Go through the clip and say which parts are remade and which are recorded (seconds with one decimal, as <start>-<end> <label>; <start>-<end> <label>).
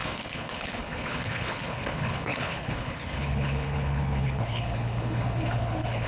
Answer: 0.0-6.1 remade